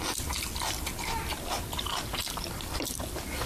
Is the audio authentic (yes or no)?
yes